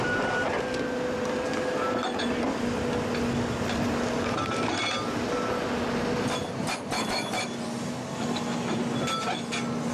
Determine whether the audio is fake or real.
real